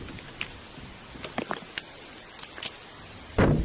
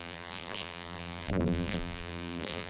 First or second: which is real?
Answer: first